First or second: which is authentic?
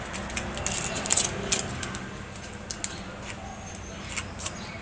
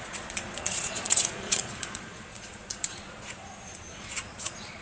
first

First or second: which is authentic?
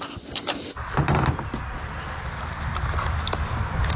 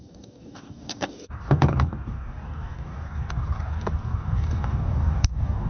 first